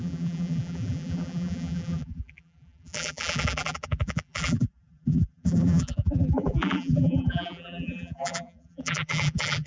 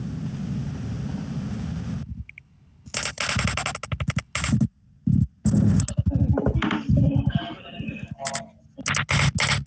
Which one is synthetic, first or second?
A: first